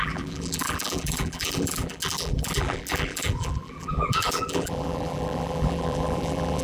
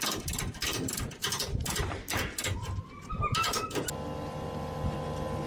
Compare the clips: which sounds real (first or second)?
second